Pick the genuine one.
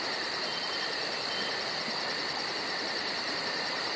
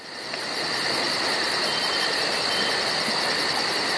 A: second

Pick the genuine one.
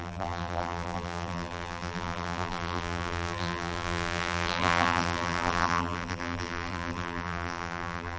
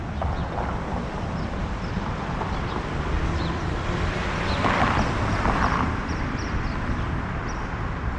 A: second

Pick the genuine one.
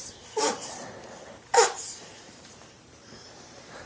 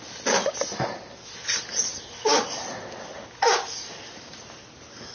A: second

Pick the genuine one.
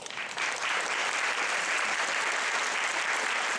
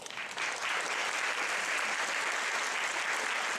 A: second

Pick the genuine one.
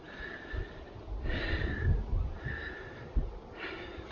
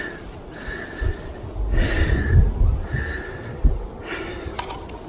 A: second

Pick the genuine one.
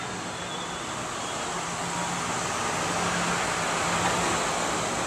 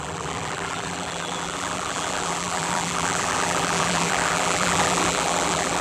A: first